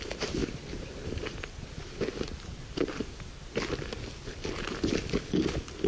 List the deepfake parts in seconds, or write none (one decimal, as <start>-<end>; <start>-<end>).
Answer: 0.4-3.9